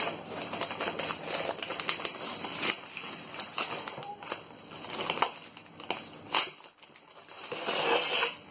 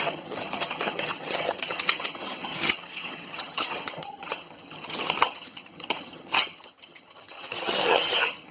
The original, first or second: first